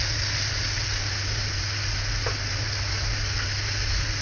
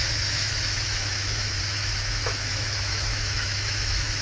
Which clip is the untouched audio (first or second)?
first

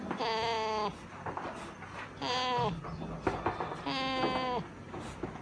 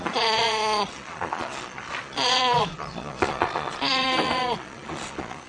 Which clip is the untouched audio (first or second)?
first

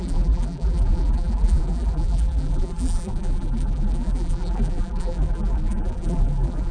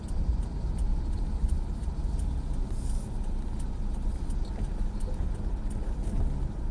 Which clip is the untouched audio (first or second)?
second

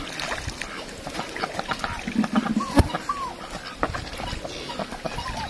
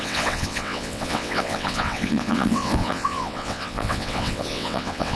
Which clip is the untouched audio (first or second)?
first